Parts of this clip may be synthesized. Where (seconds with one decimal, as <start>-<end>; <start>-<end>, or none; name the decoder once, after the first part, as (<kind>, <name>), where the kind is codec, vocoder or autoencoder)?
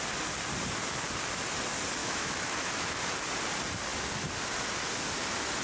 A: 2.0-3.0 (autoencoder, DAC-VAE)